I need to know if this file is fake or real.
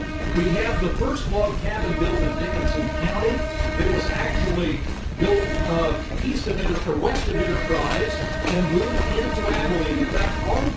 fake